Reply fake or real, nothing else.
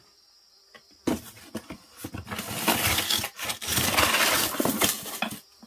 real